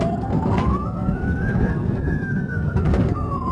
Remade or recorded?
remade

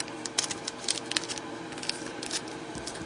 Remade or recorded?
remade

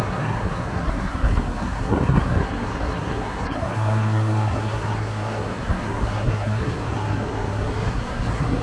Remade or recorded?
remade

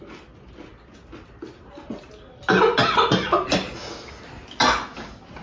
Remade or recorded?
recorded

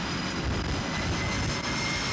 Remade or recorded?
recorded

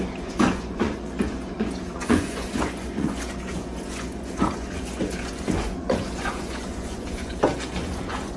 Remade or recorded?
remade